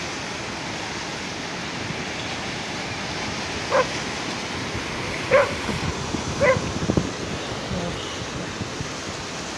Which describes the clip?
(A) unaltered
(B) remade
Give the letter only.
A